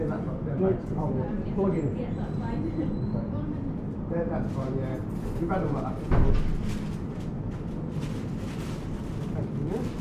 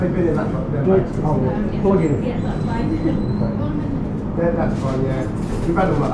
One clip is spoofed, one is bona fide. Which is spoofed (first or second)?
first